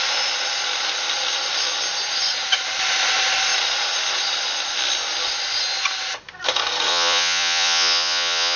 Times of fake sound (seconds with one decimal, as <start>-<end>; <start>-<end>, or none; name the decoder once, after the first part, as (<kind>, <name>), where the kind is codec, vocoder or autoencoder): 6.9-8.6 (vocoder, Vocos)